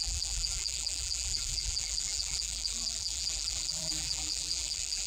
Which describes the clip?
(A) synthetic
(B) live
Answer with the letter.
A